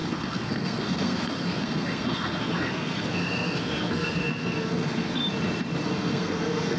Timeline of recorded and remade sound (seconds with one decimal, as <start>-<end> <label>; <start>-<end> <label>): 0.0-5.2 remade; 5.2-5.9 recorded; 5.9-6.8 remade